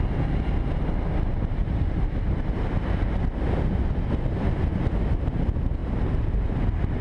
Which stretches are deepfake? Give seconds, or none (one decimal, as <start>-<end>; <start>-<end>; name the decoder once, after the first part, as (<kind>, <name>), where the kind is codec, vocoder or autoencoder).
1.6-3.2 (vocoder, BigVGAN v2); 5.8-7.0